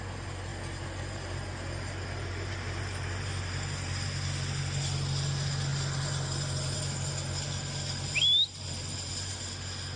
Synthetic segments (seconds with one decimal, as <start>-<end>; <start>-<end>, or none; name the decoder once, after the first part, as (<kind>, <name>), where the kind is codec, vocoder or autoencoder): none